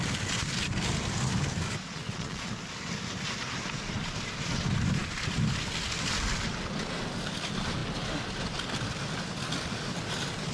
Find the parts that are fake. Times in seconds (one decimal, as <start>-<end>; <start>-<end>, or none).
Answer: 1.8-2.5